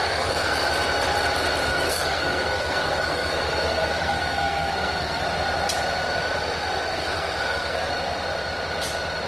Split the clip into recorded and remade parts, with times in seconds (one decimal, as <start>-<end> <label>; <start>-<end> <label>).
0.0-0.7 remade; 0.7-1.7 recorded; 1.7-5.2 remade; 5.2-6.9 recorded; 6.9-7.9 remade; 7.9-9.3 recorded